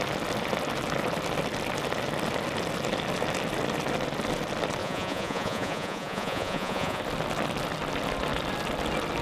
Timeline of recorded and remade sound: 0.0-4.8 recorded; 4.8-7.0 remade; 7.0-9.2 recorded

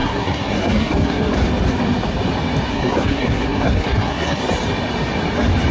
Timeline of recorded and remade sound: 0.0-1.3 remade; 1.3-2.7 recorded; 2.7-4.4 remade; 4.4-5.7 recorded

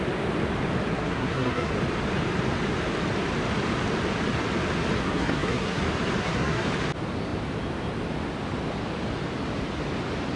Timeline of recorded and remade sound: 0.0-0.9 recorded; 0.9-1.7 remade; 1.7-5.0 recorded; 5.0-5.8 remade; 5.8-6.2 recorded; 6.2-6.7 remade; 6.7-10.4 recorded

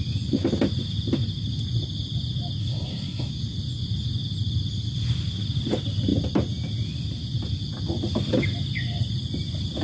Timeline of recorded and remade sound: 0.0-2.6 recorded; 2.6-3.3 remade; 3.3-9.8 recorded